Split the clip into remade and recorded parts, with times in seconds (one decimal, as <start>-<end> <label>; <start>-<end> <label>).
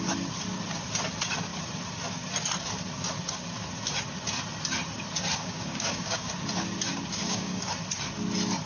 0.0-5.4 recorded; 5.4-6.3 remade; 6.3-7.2 recorded; 7.2-7.7 remade; 7.7-8.7 recorded